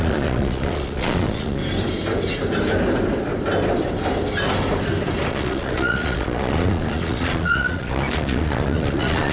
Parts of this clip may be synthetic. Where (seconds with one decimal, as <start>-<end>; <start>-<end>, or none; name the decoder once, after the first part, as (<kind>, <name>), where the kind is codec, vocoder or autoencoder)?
0.0-1.6 (vocoder, Vocos); 5.3-9.3